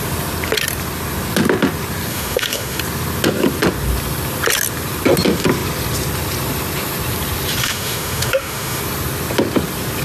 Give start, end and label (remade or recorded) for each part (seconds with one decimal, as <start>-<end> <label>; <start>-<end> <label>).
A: 0.0-2.1 recorded; 2.1-2.8 remade; 2.8-7.6 recorded; 7.6-8.8 remade; 8.8-10.0 recorded